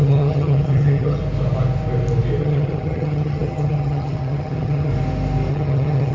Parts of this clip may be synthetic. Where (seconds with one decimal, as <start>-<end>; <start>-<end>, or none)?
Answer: 0.0-1.2; 2.4-4.9; 5.5-6.1